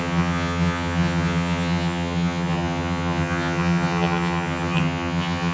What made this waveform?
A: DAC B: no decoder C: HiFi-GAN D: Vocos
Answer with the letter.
C